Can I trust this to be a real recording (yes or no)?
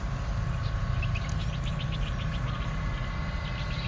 yes